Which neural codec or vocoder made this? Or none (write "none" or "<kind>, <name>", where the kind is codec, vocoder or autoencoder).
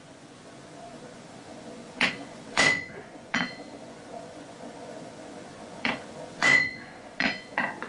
vocoder, Vocos